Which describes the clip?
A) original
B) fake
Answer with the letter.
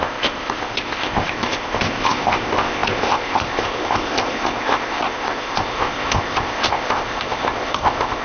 B